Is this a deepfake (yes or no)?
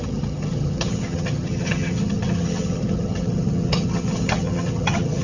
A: yes